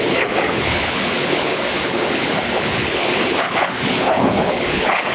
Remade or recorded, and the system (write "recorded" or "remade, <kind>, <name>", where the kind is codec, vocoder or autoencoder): remade, codec, HILCodec